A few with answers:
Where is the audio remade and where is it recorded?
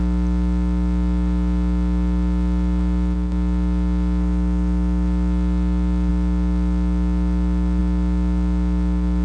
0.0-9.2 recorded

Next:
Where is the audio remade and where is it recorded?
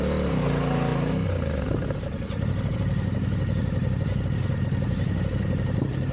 0.0-6.1 recorded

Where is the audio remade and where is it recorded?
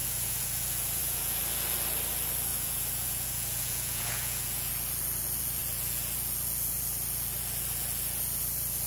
0.0-1.4 remade; 1.4-2.5 recorded; 2.5-4.7 remade; 4.7-8.9 recorded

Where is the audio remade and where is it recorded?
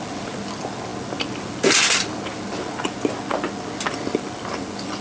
0.0-5.0 recorded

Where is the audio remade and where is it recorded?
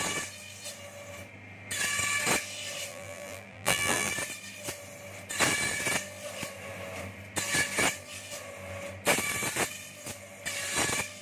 0.0-2.9 recorded; 2.9-4.1 remade; 4.1-11.2 recorded